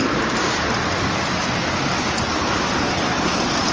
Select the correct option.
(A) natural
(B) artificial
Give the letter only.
B